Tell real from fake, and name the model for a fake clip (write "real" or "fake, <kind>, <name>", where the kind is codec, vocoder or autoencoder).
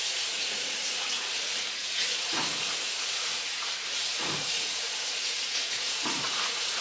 fake, vocoder, Vocos